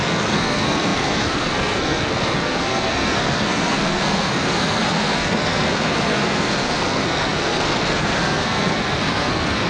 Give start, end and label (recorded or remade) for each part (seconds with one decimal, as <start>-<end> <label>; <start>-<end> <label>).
0.0-9.7 remade